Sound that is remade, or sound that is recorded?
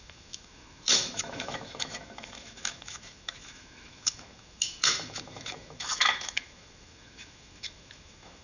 remade